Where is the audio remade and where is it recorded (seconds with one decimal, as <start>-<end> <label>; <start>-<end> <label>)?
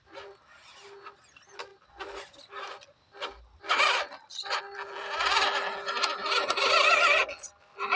0.0-8.0 recorded